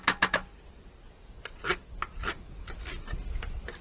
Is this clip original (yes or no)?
yes